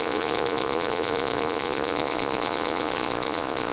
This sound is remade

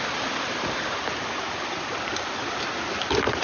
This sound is recorded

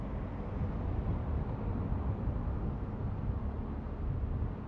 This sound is recorded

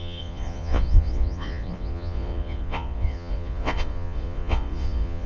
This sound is remade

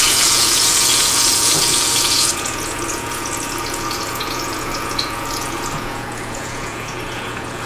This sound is remade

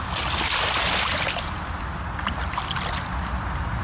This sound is recorded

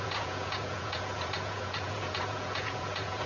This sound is remade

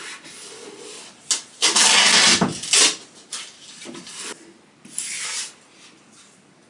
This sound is recorded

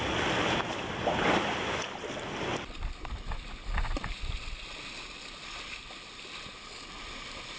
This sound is recorded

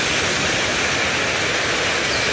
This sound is recorded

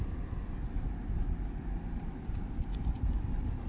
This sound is recorded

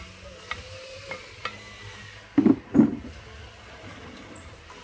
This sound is recorded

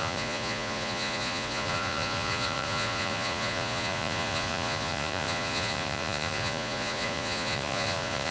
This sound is remade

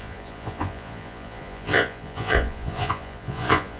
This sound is remade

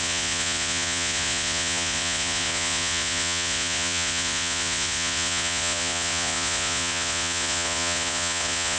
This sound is remade